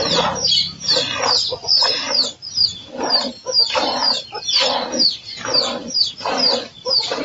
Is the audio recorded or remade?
remade